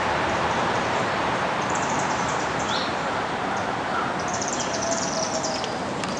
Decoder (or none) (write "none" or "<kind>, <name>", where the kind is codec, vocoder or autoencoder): vocoder, BigVGAN v2